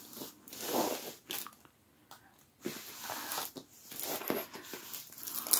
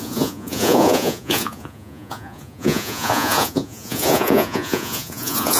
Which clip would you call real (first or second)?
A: first